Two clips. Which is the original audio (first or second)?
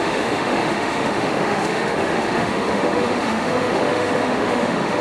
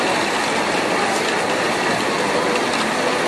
second